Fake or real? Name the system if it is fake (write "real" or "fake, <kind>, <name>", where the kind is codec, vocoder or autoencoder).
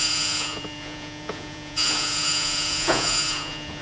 fake, vocoder, Vocos